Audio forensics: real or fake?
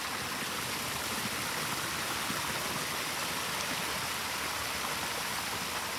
real